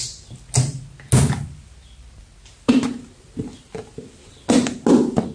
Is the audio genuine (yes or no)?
yes